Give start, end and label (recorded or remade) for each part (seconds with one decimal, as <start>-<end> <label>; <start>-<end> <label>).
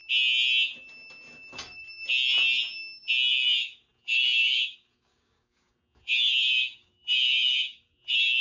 0.0-3.3 recorded; 3.3-8.4 remade